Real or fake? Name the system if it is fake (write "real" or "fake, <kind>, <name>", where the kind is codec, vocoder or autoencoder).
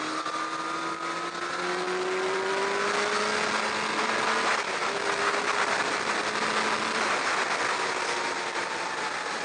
real